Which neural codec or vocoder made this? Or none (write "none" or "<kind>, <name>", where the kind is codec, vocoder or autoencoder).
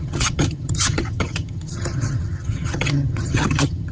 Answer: vocoder, HiFi-GAN